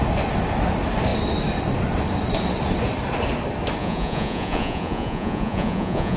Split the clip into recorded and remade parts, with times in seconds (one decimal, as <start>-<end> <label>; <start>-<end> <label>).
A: 0.0-3.8 recorded; 3.8-6.2 remade